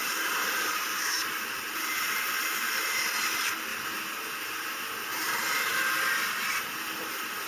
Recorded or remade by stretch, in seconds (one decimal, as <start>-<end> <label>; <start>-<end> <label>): 0.0-3.0 remade; 3.0-5.1 recorded; 5.1-5.8 remade; 5.8-7.5 recorded